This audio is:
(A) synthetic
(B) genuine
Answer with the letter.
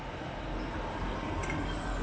B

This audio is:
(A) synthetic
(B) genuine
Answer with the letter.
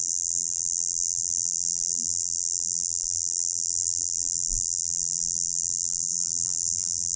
A